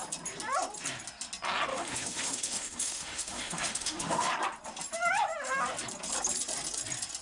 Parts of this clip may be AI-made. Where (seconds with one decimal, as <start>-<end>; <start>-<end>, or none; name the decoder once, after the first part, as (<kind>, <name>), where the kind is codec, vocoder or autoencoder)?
1.7-4.3 (autoencoder, DAC-VAE)